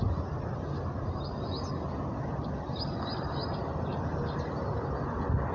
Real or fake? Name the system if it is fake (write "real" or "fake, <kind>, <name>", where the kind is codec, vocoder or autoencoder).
real